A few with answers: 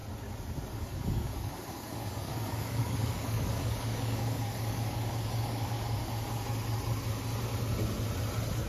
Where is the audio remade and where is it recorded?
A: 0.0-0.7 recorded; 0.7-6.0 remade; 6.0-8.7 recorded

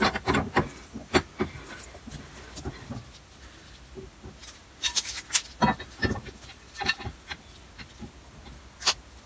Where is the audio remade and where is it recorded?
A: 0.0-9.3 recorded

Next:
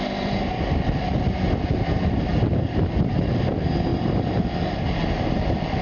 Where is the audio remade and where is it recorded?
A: 0.0-2.3 recorded; 2.3-3.5 remade; 3.5-3.9 recorded; 3.9-5.8 remade

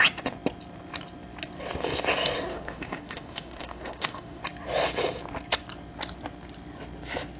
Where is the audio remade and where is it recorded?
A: 0.0-2.5 recorded; 2.5-4.4 remade; 4.4-7.4 recorded